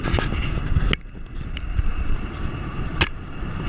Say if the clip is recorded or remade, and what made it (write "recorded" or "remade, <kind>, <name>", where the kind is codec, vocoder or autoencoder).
recorded